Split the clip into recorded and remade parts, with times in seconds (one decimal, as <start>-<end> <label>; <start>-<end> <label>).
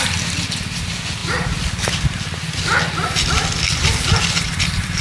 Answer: 0.0-5.0 recorded